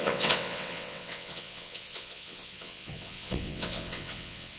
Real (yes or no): no